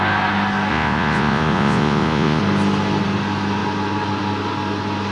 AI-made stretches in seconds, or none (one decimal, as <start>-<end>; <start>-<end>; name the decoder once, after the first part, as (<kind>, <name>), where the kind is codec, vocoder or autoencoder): 0.7-2.4 (vocoder, Vocos)